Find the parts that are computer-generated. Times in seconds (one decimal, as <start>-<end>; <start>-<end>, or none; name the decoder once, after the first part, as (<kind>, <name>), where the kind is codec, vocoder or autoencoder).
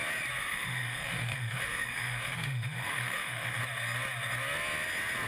0.4-3.6 (autoencoder, DAC-VAE)